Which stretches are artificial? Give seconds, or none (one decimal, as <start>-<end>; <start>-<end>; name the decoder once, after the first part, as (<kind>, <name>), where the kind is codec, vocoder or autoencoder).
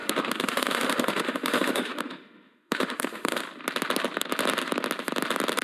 0.0-3.4 (autoencoder, DAC-VAE)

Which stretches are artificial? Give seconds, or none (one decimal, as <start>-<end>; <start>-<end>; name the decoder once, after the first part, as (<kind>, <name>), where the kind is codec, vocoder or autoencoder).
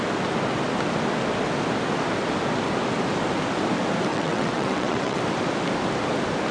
4.1-5.2 (vocoder, WaveNeXt)